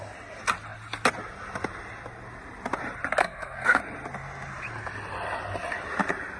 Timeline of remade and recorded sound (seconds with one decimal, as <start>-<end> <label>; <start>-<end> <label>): 0.0-3.2 recorded; 3.2-3.8 remade; 3.8-6.4 recorded